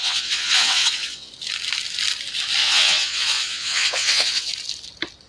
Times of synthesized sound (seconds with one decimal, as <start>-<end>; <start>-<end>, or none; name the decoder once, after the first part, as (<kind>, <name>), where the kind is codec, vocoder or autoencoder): 0.0-1.3 (vocoder, WaveNeXt); 2.6-4.5